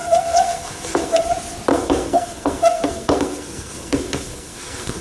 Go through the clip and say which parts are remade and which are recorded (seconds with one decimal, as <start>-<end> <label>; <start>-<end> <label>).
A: 0.0-1.2 remade; 1.2-1.7 recorded; 1.7-5.0 remade